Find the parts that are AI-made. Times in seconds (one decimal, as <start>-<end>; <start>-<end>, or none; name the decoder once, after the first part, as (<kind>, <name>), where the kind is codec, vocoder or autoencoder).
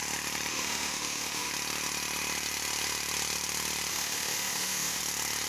0.5-1.5 (autoencoder, DAC-VAE); 3.9-5.0